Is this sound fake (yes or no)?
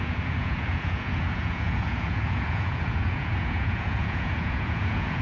yes